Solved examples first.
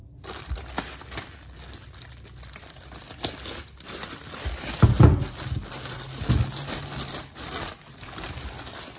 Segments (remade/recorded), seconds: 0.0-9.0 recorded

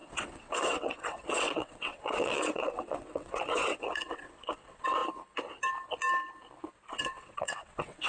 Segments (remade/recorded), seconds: 0.0-5.0 remade; 5.0-6.9 recorded; 6.9-8.1 remade

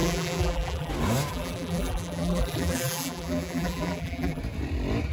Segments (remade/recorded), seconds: 0.0-0.9 remade; 0.9-1.3 recorded; 1.3-4.4 remade; 4.4-5.1 recorded